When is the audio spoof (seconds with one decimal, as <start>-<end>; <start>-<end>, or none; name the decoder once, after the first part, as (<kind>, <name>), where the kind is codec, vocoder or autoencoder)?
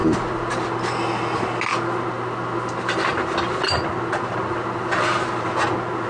none